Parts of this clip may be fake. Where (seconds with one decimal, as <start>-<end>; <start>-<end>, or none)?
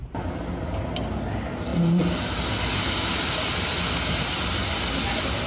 none